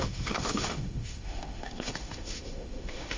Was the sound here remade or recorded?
remade